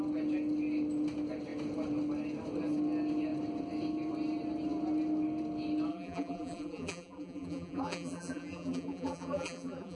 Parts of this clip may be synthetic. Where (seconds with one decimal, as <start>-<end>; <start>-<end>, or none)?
5.9-10.0